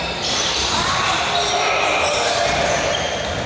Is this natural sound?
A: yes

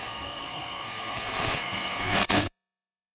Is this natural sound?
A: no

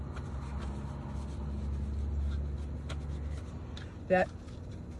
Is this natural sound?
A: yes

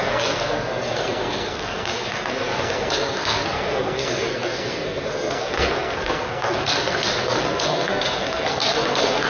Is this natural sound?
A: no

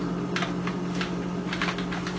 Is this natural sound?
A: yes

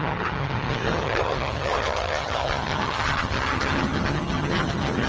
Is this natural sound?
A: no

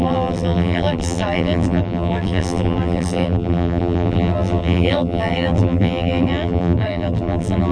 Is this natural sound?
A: no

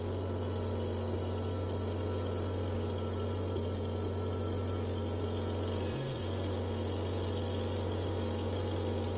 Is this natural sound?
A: yes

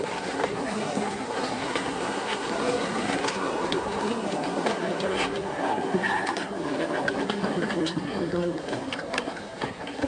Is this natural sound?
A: no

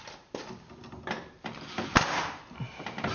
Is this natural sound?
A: yes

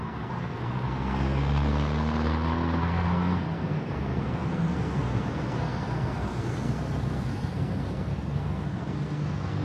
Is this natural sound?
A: no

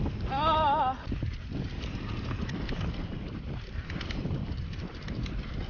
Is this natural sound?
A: yes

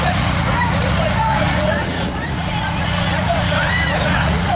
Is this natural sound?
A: no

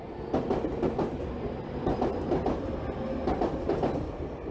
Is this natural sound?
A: yes